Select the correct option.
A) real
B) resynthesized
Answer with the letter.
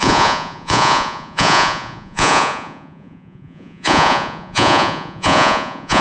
B